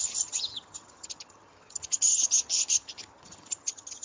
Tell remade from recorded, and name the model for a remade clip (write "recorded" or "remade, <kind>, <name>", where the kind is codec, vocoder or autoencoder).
remade, vocoder, HiFi-GAN